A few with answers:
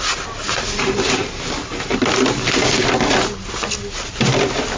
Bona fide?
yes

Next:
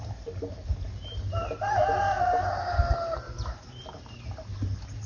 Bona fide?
yes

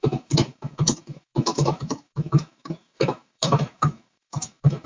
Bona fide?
no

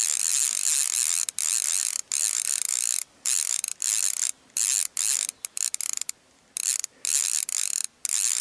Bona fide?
yes